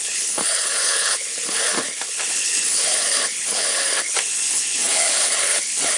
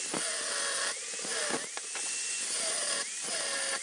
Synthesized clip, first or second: first